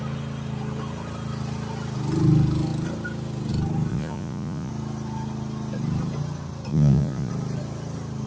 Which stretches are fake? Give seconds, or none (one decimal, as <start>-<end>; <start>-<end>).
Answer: 3.9-4.7; 6.7-7.3